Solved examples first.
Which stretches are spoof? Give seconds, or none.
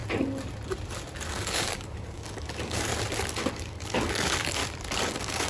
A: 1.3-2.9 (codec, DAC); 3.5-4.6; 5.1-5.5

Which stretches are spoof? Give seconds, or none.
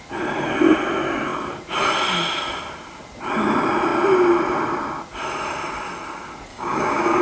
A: 6.5-7.2 (codec, DAC)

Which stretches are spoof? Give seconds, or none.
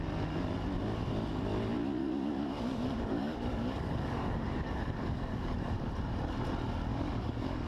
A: 2.0-5.9 (codec, DAC); 6.9-7.7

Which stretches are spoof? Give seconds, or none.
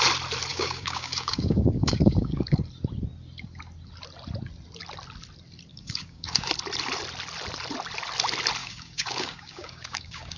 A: 0.5-2.6 (codec, DAC); 5.7-6.5; 8.6-10.4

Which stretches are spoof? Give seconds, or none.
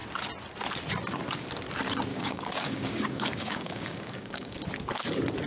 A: 2.1-4.6 (codec, DAC)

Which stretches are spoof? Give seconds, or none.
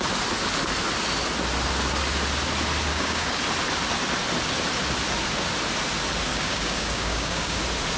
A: 2.9-3.4 (codec, DAC); 6.3-7.6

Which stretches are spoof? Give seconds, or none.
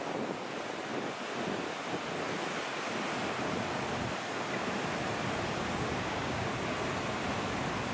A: 5.7-6.5 (codec, DAC)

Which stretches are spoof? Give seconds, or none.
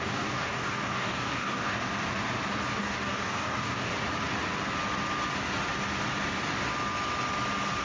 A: 0.0-1.9 (codec, DAC); 2.8-3.9